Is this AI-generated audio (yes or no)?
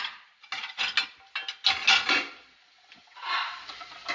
no